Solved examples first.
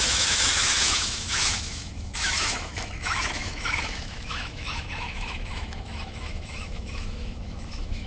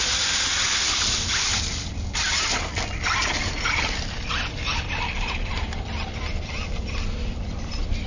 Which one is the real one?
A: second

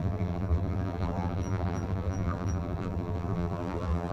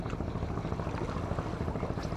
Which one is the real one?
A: second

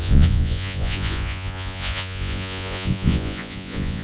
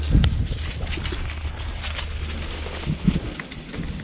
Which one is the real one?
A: second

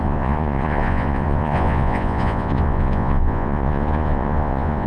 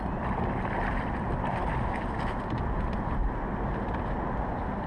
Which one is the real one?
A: second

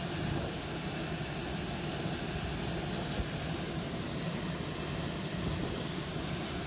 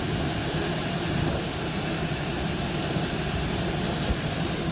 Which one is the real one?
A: first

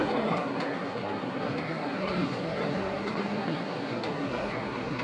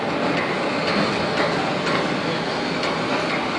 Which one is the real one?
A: second